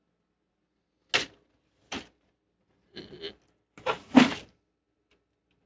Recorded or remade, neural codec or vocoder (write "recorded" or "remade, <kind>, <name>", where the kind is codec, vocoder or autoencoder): recorded